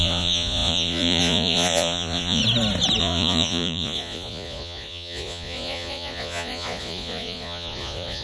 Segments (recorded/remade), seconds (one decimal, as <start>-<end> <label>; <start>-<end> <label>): 0.0-2.4 remade; 2.4-3.0 recorded; 3.0-8.2 remade